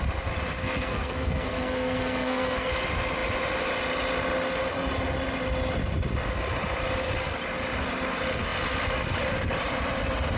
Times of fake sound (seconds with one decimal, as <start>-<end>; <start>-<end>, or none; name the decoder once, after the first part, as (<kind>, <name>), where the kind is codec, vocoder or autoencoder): 0.6-2.7 (codec, SNAC)